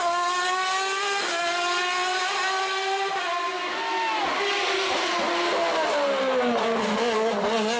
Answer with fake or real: real